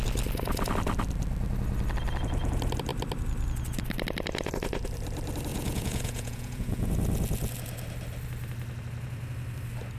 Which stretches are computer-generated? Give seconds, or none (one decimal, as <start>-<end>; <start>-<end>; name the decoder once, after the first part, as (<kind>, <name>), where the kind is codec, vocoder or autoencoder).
5.5-6.9 (vocoder, Vocos)